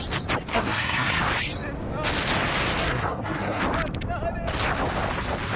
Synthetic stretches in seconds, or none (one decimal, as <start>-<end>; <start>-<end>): 0.5-1.2; 2.8-3.6